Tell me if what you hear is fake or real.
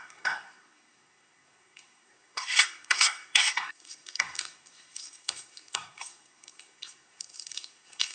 fake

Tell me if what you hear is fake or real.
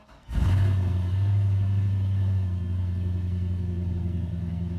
fake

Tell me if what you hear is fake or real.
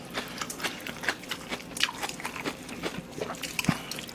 real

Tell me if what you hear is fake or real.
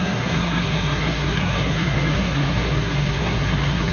fake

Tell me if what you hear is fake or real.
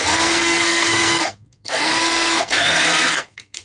fake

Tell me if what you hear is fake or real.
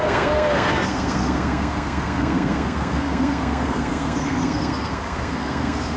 fake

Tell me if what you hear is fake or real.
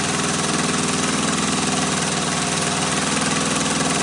real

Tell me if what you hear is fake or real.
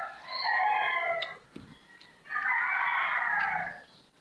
real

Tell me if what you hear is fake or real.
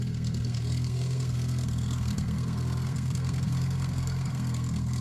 fake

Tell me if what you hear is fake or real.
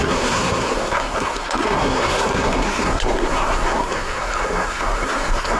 fake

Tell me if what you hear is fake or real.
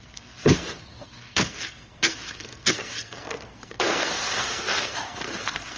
fake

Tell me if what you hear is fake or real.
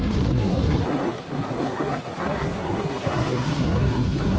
fake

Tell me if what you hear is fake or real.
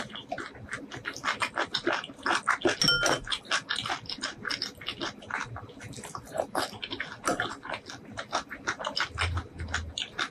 real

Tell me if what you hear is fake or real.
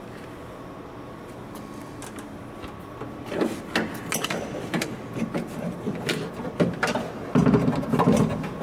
real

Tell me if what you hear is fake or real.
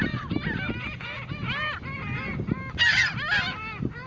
real